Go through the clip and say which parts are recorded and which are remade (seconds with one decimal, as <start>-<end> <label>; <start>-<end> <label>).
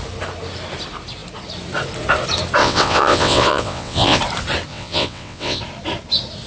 0.0-2.6 recorded; 2.6-4.2 remade; 4.2-4.7 recorded; 4.7-5.6 remade; 5.6-6.5 recorded